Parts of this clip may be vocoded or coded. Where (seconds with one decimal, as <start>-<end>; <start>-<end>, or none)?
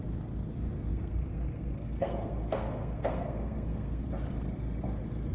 0.9-4.1